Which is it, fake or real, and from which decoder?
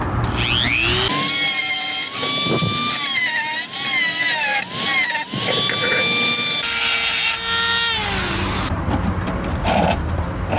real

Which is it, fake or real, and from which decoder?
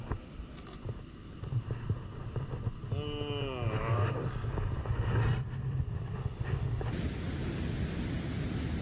real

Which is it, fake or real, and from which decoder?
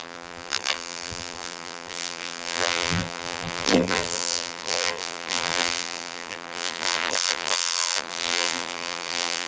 fake, vocoder, BigVGAN v2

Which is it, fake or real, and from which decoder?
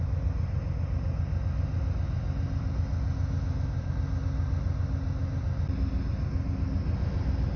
real